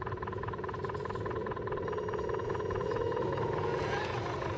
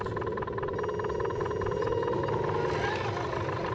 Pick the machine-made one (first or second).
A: first